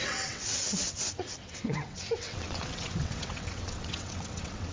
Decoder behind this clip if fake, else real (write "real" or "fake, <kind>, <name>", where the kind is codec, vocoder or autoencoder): fake, vocoder, WaveNeXt